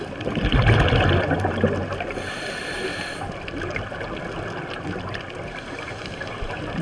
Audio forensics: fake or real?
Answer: real